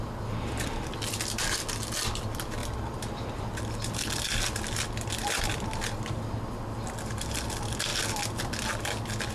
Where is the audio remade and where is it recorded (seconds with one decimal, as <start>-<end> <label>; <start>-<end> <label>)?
0.0-9.3 recorded